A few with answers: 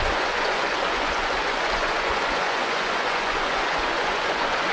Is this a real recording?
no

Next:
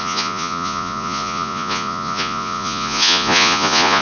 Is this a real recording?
no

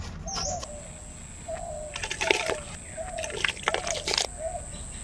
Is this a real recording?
yes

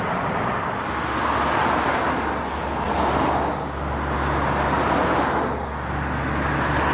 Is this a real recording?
yes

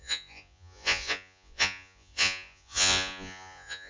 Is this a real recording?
no